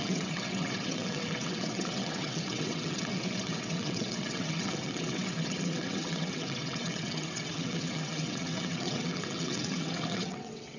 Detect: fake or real fake